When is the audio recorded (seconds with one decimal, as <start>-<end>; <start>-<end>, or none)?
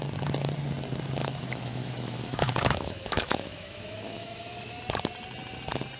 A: 0.0-1.2; 4.8-6.0